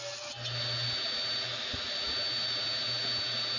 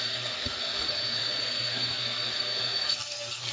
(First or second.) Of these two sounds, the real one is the first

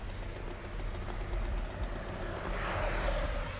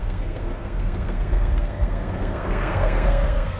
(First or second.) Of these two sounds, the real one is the first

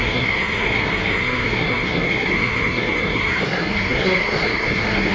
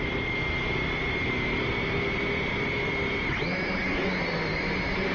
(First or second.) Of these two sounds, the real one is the second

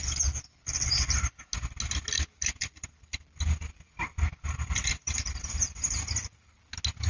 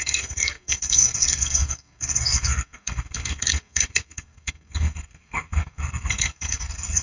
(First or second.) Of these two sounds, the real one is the first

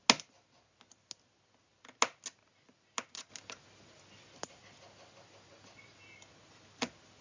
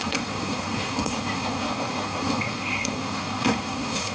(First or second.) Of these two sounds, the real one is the first